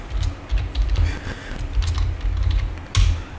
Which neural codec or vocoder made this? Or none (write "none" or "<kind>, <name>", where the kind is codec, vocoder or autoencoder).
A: none